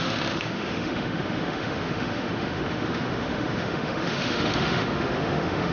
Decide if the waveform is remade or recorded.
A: remade